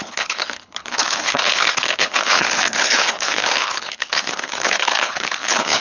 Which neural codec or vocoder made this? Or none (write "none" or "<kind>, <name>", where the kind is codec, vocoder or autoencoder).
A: codec, HILCodec